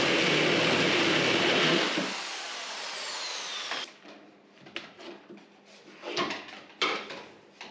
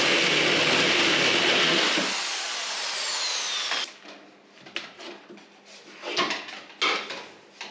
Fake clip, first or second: first